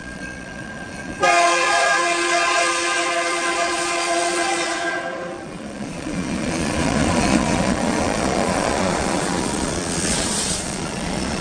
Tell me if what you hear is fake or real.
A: fake